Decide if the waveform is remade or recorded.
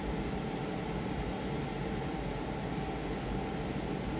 recorded